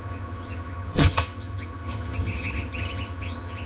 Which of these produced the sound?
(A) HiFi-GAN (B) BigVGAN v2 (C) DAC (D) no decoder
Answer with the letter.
A